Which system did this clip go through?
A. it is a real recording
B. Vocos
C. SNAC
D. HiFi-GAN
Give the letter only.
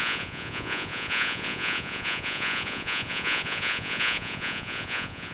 B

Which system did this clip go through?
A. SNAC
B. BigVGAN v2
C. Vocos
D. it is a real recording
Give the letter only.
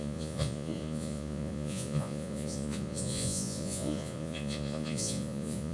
C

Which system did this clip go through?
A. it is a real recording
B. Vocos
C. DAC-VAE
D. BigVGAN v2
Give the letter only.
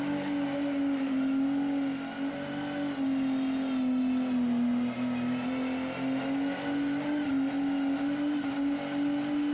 A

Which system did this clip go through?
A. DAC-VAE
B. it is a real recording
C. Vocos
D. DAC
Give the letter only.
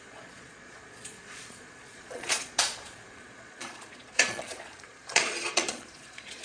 C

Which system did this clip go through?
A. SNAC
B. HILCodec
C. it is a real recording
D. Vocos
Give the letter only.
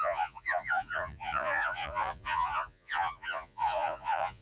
D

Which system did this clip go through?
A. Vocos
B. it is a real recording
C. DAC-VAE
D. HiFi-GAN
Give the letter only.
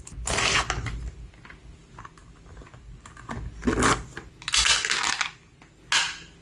B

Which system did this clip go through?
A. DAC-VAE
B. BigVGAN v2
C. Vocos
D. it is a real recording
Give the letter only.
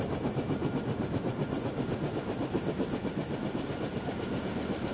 D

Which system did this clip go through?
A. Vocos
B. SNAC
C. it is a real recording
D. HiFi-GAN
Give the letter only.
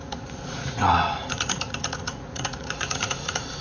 A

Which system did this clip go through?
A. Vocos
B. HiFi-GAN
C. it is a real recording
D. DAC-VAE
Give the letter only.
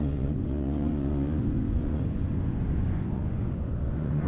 A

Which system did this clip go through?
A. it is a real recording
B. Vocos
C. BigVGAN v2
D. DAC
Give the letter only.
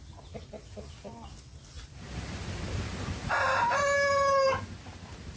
A